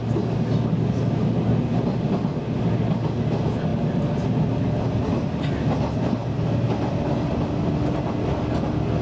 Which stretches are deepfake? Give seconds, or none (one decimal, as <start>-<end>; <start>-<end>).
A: none